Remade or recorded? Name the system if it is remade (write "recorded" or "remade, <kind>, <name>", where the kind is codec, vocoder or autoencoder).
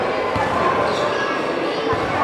recorded